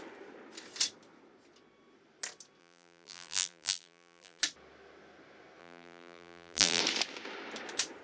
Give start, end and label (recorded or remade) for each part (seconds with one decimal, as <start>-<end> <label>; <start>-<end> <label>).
0.0-2.6 recorded; 2.6-4.4 remade; 4.4-5.6 recorded; 5.6-6.8 remade; 6.8-8.0 recorded